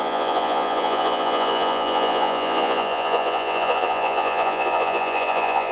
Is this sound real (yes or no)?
no